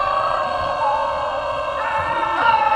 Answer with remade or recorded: remade